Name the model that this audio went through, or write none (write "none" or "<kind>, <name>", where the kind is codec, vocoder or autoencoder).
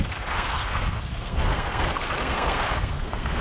codec, SNAC